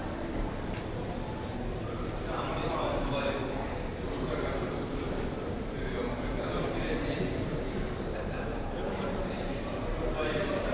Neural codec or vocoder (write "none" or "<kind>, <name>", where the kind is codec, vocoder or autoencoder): vocoder, BigVGAN v2